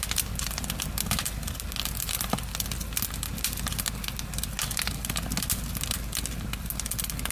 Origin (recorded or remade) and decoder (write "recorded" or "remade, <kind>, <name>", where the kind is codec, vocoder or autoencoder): recorded